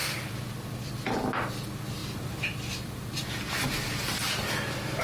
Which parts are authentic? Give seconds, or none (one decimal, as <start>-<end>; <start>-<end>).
0.9-2.0